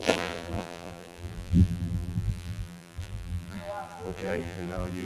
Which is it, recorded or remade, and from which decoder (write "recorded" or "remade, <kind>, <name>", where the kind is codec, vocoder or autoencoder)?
remade, vocoder, BigVGAN v2